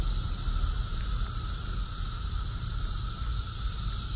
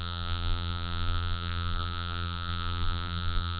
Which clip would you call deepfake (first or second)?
second